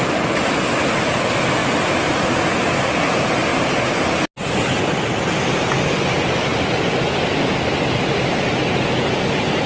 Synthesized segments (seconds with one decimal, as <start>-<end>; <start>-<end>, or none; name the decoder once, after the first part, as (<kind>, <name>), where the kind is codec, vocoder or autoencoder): 1.6-2.4 (vocoder, BigVGAN v2)

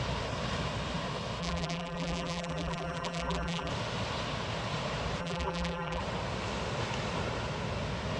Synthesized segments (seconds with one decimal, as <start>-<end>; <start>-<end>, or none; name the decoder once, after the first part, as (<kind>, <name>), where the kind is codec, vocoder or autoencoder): 1.4-3.7 (vocoder, BigVGAN v2); 5.2-6.0